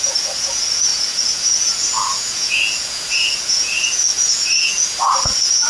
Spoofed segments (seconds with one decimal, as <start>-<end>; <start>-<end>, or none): 0.0-5.7